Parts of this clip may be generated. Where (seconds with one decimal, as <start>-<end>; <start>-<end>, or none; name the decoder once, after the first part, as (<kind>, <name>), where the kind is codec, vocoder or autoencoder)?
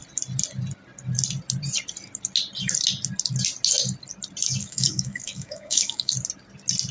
4.6-6.1 (autoencoder, DAC-VAE)